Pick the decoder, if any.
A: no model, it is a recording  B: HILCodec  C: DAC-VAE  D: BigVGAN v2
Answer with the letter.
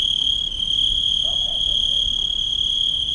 A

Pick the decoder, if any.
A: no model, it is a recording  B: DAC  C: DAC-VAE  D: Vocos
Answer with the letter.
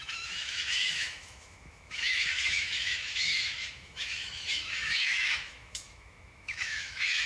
C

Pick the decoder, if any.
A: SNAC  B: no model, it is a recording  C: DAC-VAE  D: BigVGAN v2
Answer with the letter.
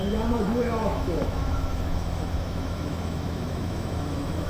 C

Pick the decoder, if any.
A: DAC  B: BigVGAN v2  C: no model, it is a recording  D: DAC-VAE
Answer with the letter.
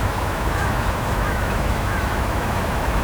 D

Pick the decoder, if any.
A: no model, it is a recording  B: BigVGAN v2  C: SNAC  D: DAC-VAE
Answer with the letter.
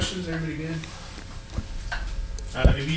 A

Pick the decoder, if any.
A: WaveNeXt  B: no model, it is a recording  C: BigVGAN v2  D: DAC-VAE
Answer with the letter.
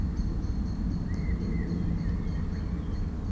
B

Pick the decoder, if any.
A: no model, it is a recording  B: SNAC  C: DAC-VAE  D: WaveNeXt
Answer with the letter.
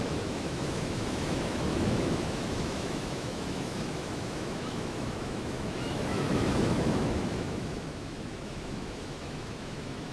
C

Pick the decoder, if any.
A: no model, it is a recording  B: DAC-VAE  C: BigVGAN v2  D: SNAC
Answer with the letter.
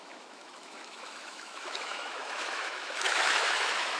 B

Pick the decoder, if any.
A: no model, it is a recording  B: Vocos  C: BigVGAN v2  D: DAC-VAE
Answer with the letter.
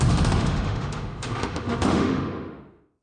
D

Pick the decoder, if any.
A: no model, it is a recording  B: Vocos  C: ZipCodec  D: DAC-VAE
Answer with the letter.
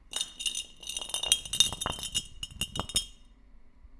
A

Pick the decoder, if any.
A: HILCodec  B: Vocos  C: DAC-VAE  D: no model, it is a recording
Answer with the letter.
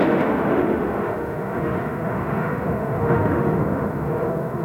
C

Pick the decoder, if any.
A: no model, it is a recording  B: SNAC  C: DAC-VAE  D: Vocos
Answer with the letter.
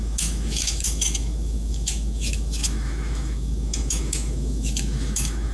C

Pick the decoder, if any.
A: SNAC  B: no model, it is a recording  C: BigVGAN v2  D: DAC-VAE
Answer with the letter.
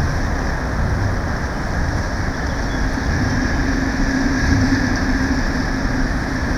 B